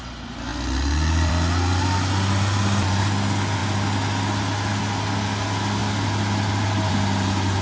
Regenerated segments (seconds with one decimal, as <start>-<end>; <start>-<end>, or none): none